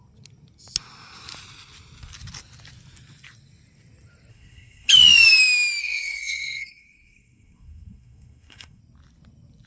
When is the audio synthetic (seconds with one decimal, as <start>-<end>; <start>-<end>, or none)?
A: 4.3-4.9; 5.8-8.8